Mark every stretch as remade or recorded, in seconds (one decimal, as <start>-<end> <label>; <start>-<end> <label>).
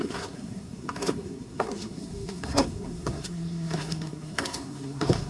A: 0.0-5.3 remade